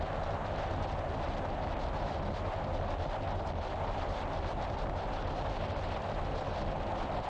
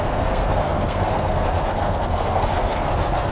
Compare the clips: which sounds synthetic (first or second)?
second